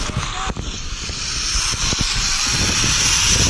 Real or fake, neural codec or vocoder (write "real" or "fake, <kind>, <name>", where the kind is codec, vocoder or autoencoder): real